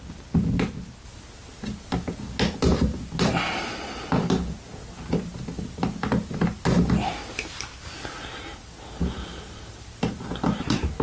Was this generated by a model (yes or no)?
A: no